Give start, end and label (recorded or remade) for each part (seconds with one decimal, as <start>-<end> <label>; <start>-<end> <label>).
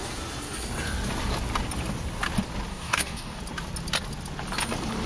0.0-2.7 recorded; 2.7-3.4 remade; 3.4-5.1 recorded